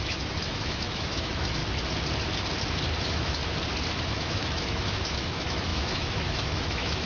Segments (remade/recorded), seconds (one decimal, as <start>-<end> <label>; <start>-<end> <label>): 0.0-1.6 remade; 1.6-3.0 recorded; 3.0-3.4 remade; 3.4-4.0 recorded; 4.0-7.1 remade